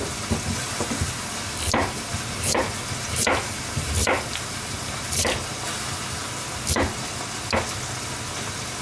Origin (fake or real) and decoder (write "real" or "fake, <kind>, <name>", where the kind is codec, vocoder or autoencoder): real